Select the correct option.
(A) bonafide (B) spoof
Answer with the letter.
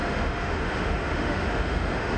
B